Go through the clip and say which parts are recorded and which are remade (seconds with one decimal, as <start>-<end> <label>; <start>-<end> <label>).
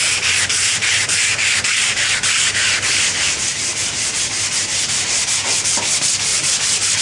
0.0-3.5 recorded; 3.5-4.2 remade; 4.2-6.3 recorded; 6.3-7.0 remade